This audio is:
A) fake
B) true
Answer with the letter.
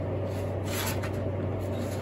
B